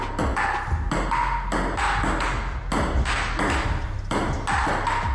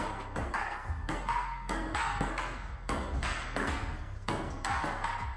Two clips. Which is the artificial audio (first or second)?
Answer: second